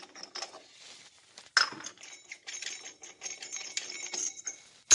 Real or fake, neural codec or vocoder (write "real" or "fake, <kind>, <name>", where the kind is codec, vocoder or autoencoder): real